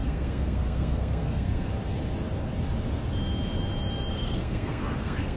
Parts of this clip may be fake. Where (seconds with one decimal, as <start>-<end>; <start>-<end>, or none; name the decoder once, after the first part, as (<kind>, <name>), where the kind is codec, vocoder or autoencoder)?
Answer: 0.0-1.7 (codec, SNAC); 4.1-5.4